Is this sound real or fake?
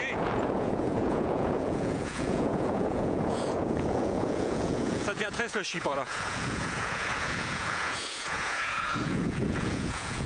fake